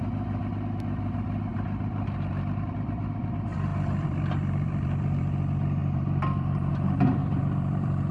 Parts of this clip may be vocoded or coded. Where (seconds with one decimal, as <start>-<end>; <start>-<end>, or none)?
1.5-2.7; 3.7-5.2; 5.8-6.7; 7.2-8.1